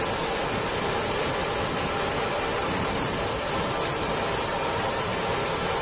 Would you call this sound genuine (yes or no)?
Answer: yes